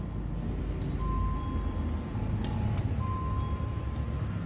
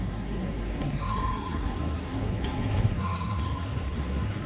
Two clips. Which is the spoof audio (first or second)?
second